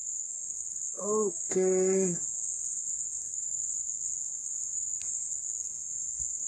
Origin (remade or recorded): remade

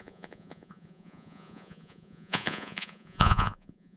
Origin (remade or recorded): remade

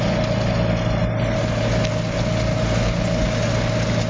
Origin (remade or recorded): recorded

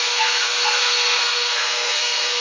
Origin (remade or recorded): remade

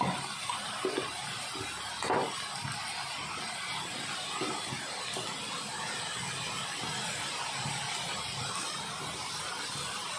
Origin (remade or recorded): recorded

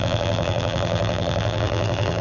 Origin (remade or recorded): remade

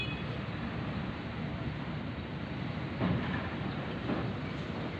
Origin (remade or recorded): recorded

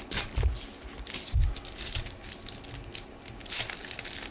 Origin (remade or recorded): recorded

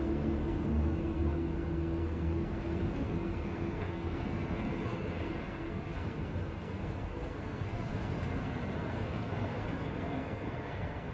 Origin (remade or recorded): remade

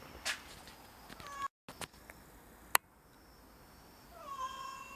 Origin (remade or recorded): recorded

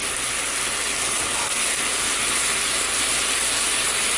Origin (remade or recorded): recorded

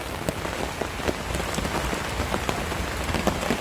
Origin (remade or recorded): recorded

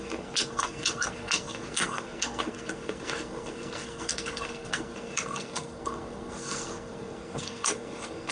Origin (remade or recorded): remade